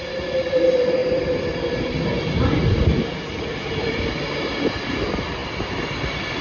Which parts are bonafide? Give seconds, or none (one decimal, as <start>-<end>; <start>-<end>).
0.0-6.4